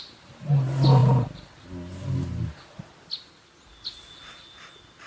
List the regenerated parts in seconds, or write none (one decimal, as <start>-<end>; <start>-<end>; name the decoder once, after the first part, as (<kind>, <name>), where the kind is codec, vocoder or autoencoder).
none